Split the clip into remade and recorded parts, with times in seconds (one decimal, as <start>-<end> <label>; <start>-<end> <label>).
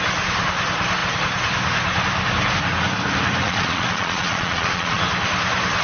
0.0-3.4 recorded; 3.4-5.0 remade; 5.0-5.8 recorded